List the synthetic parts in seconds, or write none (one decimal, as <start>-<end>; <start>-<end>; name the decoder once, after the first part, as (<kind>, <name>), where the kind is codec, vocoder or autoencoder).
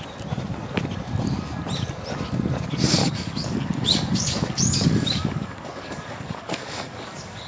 3.0-7.5 (codec, DAC)